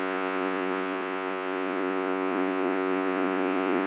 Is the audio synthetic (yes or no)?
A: yes